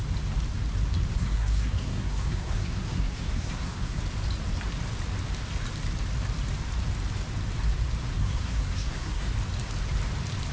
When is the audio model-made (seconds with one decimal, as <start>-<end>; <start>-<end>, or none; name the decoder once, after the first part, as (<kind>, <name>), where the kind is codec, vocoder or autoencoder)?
1.2-4.0 (codec, SNAC); 8.2-9.3